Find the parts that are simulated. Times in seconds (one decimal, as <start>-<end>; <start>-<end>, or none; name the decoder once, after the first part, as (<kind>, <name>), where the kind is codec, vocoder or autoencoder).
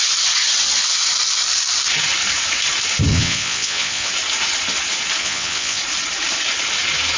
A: 3.1-4.1 (vocoder, WaveNeXt); 5.2-5.8